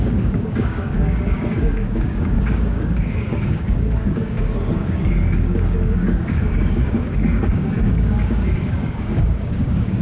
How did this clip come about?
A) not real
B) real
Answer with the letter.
A